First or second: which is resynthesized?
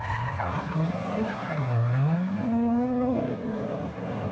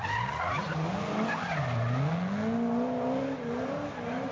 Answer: first